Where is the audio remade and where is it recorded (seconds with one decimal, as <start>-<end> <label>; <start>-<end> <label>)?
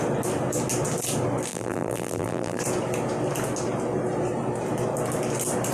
0.0-1.5 recorded; 1.5-2.6 remade; 2.6-5.7 recorded